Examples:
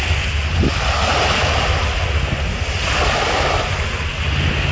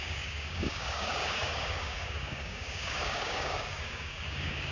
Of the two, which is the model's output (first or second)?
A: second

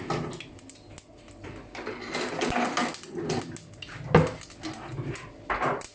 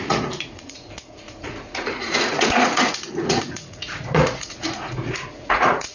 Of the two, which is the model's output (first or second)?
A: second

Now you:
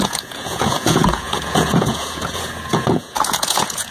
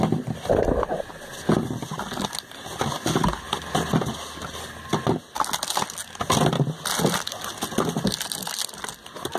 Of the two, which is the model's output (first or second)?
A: first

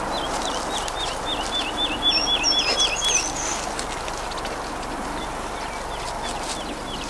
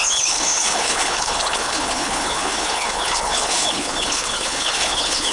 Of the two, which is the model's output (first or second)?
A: second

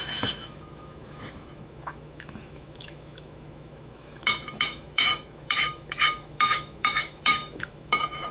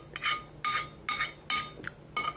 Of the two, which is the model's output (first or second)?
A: first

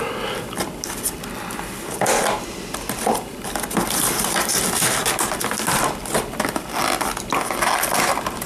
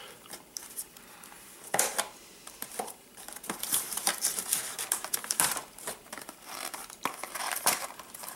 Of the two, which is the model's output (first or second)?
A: second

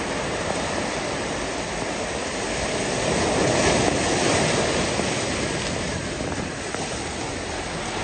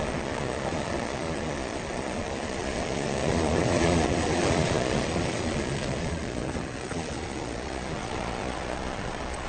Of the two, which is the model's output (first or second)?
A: second